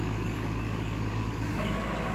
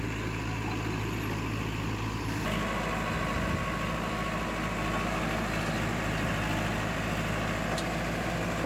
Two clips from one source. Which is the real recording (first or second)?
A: second